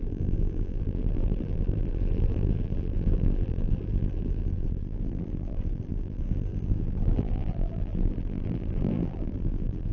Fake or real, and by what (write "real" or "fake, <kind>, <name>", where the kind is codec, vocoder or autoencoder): fake, vocoder, BigVGAN v2